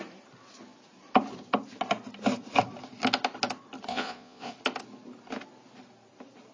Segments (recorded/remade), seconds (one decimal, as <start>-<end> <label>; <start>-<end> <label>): 0.0-3.9 recorded; 3.9-4.5 remade; 4.5-6.5 recorded